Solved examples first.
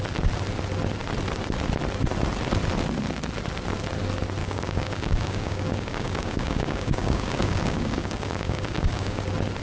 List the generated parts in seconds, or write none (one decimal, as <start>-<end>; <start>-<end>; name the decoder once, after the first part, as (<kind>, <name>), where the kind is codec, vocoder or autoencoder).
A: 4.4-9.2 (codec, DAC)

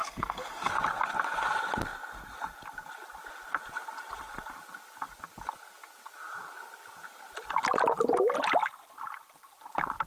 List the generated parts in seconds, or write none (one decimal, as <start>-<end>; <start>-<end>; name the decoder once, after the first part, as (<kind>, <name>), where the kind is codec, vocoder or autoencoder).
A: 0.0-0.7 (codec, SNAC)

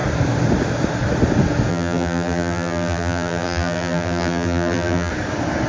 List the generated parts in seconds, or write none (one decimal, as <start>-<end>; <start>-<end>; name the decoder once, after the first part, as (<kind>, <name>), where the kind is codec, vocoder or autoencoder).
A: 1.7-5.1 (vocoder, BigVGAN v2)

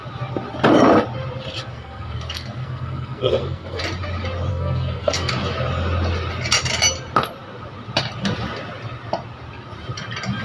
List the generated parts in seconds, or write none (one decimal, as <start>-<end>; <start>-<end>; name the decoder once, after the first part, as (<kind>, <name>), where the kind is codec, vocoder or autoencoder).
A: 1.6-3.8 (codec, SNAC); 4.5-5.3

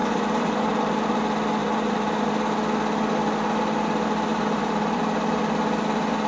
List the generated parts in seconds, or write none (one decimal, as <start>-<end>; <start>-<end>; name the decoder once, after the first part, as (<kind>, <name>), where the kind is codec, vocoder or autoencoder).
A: 0.0-1.2 (vocoder, BigVGAN v2); 1.6-2.3; 4.3-5.0

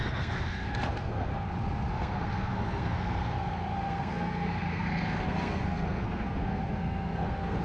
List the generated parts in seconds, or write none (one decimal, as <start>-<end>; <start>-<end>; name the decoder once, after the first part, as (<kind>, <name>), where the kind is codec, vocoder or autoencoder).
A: 0.0-1.3 (codec, SNAC); 1.9-7.6

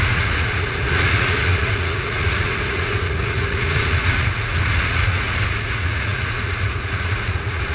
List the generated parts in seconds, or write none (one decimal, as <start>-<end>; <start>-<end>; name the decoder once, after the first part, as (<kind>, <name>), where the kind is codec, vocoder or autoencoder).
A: 0.0-7.7 (vocoder, Vocos)

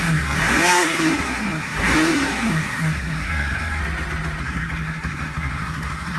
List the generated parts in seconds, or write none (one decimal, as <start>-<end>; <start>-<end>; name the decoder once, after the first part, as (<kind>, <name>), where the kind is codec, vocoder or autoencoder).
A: 0.0-3.8 (codec, SNAC); 4.4-6.2